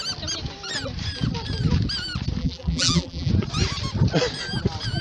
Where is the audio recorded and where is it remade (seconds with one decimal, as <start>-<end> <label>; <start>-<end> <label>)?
0.0-2.4 recorded; 2.4-3.3 remade; 3.3-5.0 recorded